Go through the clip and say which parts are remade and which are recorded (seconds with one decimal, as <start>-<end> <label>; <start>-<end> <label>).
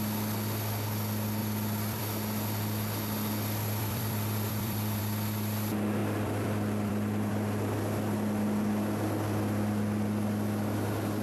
0.0-1.4 recorded; 1.4-2.0 remade; 2.0-3.8 recorded; 3.8-5.0 remade; 5.0-6.0 recorded; 6.0-7.3 remade; 7.3-11.2 recorded